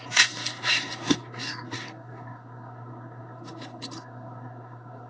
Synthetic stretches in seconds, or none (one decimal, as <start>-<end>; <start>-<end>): 0.0-5.1